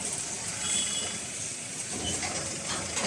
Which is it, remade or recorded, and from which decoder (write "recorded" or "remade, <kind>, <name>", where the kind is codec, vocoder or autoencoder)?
remade, vocoder, BigVGAN v2